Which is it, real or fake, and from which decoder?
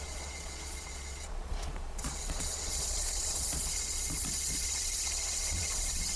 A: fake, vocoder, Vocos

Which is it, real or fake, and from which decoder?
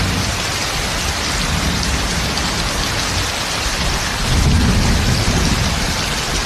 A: real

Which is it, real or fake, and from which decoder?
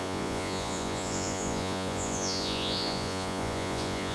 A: fake, vocoder, Vocos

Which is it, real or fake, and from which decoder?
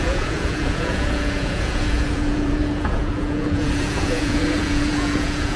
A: fake, vocoder, Vocos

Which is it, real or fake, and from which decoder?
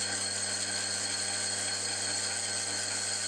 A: real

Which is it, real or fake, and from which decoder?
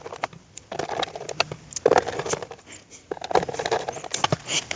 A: real